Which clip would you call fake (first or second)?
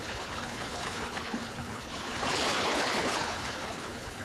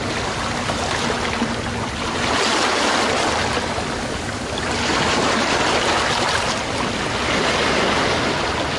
first